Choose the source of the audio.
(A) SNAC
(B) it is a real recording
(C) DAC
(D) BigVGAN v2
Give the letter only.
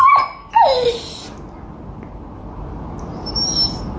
B